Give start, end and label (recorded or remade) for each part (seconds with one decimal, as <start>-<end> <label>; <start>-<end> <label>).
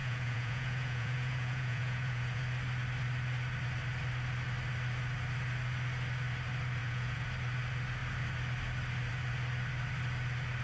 0.0-2.4 remade; 2.4-6.8 recorded; 6.8-7.3 remade; 7.3-10.6 recorded